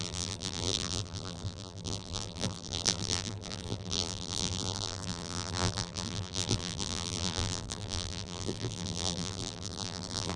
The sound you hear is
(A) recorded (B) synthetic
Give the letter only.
B